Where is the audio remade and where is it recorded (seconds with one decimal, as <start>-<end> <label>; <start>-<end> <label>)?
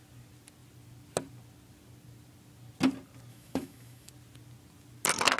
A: 0.0-3.3 recorded; 3.3-4.1 remade; 4.1-5.4 recorded